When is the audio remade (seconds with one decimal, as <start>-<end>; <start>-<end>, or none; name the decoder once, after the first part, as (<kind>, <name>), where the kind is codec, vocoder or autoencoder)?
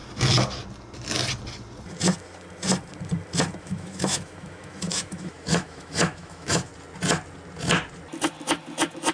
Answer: 3.6-6.7 (autoencoder, DAC-VAE)